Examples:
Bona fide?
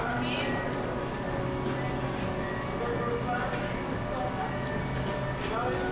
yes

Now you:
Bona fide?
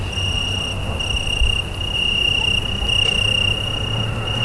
yes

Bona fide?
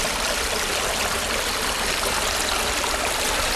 no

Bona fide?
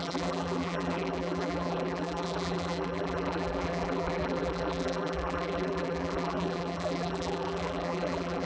no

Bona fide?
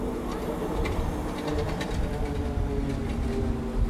yes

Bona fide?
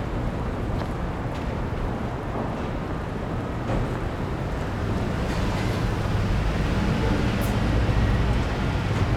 yes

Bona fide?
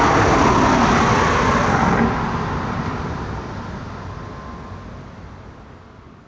yes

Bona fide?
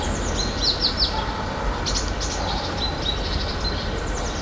yes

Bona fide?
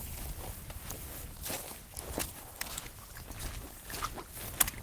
yes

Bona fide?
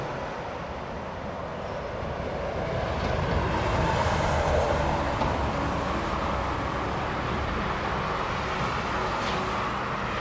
yes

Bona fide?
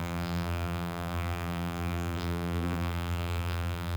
no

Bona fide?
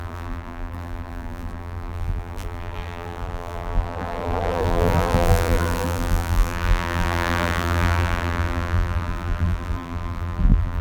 no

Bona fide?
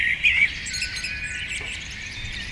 no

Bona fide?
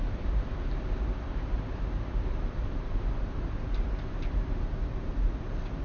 no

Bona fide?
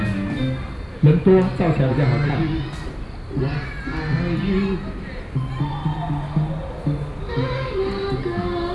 yes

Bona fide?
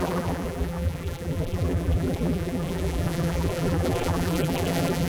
no